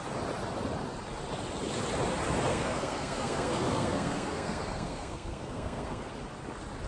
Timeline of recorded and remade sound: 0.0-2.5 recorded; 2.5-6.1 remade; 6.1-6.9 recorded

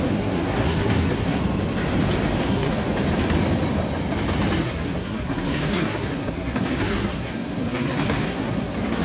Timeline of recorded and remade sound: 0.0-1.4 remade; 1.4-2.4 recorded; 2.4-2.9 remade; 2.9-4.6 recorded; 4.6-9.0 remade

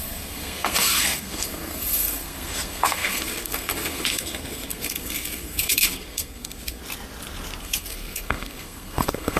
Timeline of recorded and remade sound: 0.0-6.8 remade; 6.8-7.6 recorded; 7.6-9.4 remade

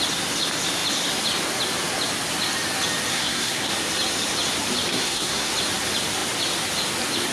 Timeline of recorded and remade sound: 0.0-3.1 recorded; 3.1-3.7 remade; 3.7-4.9 recorded; 4.9-5.5 remade; 5.5-7.3 recorded

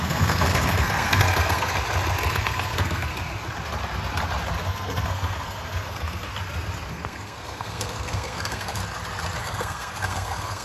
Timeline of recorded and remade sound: 0.0-1.7 remade; 1.7-2.3 recorded; 2.3-3.1 remade; 3.1-4.6 recorded; 4.6-6.3 remade; 6.3-6.9 recorded; 6.9-8.8 remade; 8.8-9.4 recorded; 9.4-10.6 remade

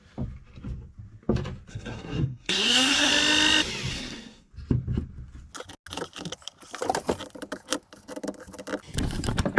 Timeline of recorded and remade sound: 0.0-1.7 recorded; 1.7-3.1 remade; 3.1-3.9 recorded; 3.9-4.5 remade; 4.5-9.6 recorded